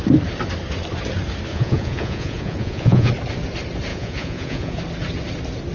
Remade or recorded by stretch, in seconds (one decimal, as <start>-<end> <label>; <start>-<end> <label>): 0.0-1.5 recorded; 1.5-3.1 remade; 3.1-3.9 recorded; 3.9-4.8 remade; 4.8-5.7 recorded